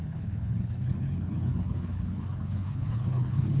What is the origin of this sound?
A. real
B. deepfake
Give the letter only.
B